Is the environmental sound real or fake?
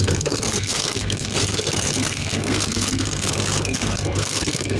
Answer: fake